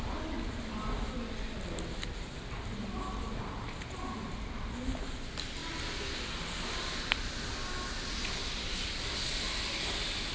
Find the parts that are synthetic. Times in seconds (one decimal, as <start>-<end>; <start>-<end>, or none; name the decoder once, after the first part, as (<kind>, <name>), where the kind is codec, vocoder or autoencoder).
none